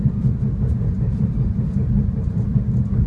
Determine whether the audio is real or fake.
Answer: fake